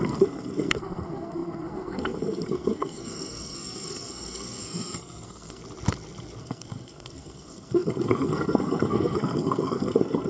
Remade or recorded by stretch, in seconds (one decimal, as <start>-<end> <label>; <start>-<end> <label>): 0.0-5.6 remade; 5.6-6.4 recorded; 6.4-10.3 remade